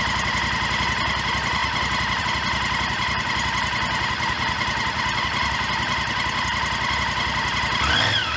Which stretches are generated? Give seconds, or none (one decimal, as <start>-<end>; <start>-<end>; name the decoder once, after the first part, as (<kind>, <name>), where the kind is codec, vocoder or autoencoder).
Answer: none